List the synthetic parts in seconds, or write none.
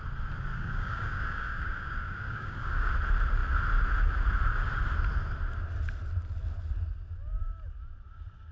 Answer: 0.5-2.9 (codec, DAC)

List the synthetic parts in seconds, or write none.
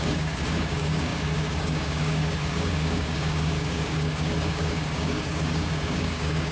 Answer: 0.0-6.5 (codec, DAC)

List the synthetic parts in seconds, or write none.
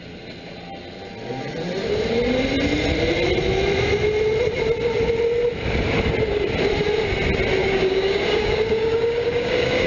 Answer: 7.6-9.9 (codec, DAC)